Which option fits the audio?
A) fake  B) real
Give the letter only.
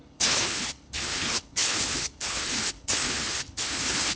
A